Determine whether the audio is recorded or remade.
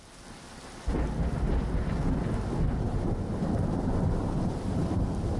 recorded